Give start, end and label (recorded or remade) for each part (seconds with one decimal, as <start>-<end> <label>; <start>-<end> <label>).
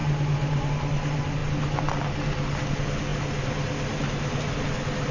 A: 0.0-5.1 recorded